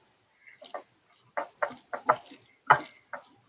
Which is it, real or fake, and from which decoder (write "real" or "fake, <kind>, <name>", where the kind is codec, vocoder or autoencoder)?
real